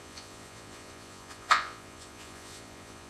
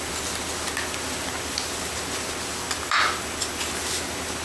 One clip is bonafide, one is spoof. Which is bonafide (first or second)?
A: second